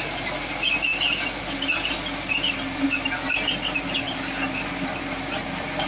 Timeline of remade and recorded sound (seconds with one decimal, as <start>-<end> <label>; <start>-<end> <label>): 0.0-5.9 recorded